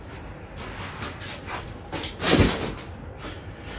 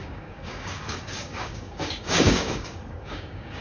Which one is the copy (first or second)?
second